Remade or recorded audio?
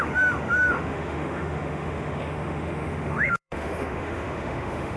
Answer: remade